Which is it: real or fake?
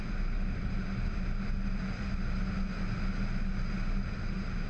real